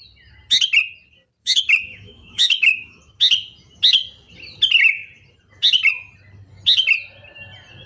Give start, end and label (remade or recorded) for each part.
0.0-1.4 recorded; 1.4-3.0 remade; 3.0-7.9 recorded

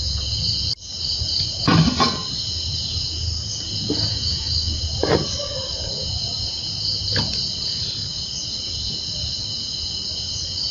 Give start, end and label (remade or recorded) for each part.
0.0-4.1 recorded; 4.1-4.8 remade; 4.8-10.7 recorded

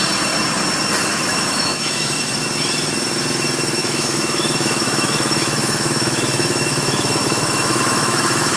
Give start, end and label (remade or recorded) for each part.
0.0-1.1 recorded; 1.1-2.3 remade; 2.3-3.8 recorded; 3.8-8.6 remade

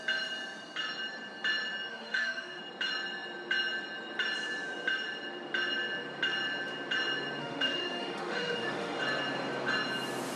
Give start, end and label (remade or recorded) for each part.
0.0-1.9 recorded; 1.9-2.6 remade; 2.6-7.4 recorded; 7.4-9.0 remade; 9.0-10.4 recorded

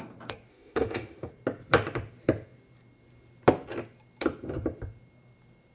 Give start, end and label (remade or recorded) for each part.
0.0-0.5 recorded; 0.5-1.3 remade; 1.3-5.7 recorded

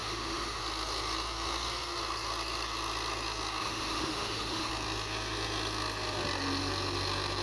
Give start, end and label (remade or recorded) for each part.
0.0-0.6 remade; 0.6-3.6 recorded; 3.6-4.7 remade; 4.7-7.4 recorded

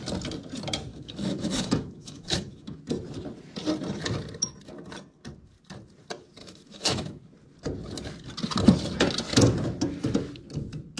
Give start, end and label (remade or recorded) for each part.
0.0-0.9 recorded; 0.9-2.8 remade; 2.8-6.4 recorded; 6.4-7.2 remade; 7.2-11.0 recorded